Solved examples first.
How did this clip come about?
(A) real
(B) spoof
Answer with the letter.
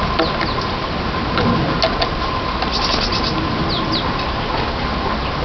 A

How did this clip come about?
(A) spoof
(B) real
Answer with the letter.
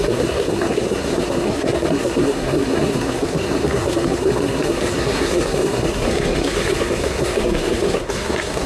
A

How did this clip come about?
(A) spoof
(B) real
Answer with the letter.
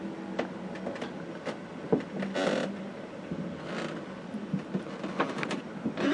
B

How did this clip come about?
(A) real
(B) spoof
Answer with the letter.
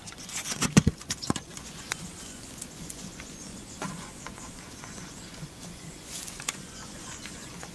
B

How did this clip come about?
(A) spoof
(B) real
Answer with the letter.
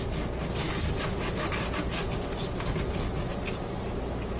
B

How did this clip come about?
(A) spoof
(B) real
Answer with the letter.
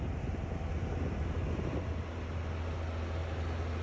B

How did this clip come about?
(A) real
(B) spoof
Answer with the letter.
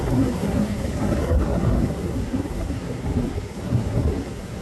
B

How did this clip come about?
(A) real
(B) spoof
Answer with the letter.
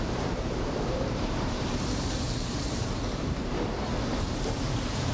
B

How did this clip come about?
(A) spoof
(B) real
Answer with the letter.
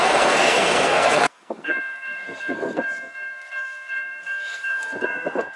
A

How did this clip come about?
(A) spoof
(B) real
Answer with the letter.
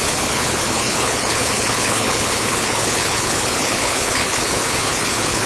A